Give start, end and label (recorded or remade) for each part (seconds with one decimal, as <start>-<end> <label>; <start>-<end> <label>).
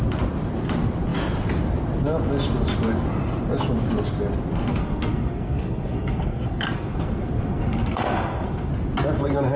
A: 0.0-4.7 recorded; 4.7-8.7 remade; 8.7-9.6 recorded